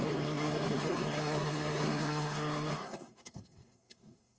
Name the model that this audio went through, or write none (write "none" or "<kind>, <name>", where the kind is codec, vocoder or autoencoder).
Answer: codec, SNAC